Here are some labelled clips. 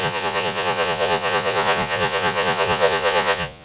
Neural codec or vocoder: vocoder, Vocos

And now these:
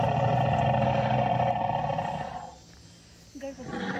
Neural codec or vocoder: none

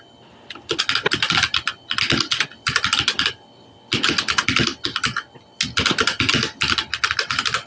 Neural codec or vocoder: none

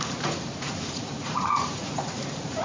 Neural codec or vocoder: vocoder, Vocos